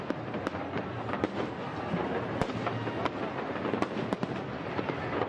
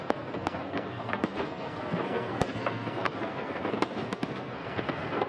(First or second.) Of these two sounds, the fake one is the second